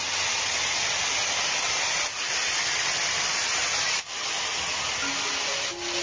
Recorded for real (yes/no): yes